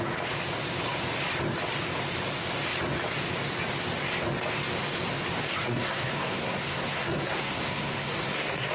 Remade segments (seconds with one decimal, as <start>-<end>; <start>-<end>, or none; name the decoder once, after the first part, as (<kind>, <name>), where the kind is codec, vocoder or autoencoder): 5.6-8.7 (codec, SNAC)